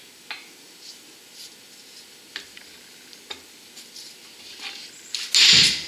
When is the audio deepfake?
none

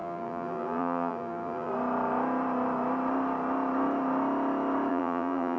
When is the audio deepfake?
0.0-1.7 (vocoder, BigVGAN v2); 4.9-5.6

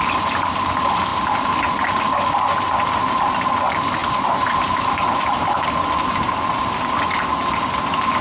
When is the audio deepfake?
none

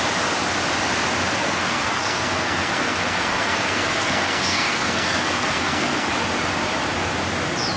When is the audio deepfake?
1.4-6.1 (codec, SNAC)

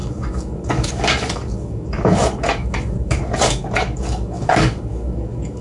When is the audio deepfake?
0.0-5.6 (codec, DAC)